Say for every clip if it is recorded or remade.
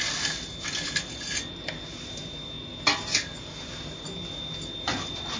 recorded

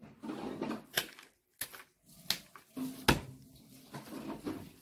recorded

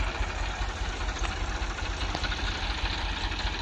recorded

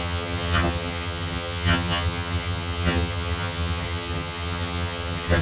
remade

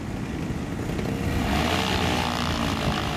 recorded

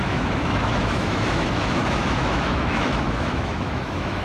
remade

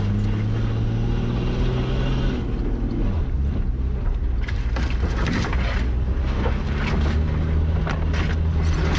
recorded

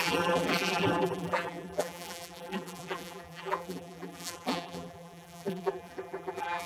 remade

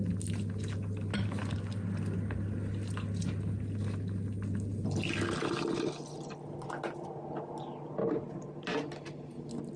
recorded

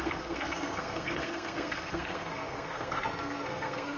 remade